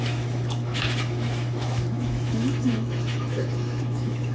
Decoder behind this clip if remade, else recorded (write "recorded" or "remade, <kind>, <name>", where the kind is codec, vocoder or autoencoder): remade, autoencoder, DAC-VAE